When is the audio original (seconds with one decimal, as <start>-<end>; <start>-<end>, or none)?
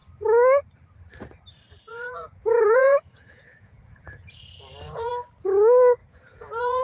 0.0-1.9; 5.1-6.0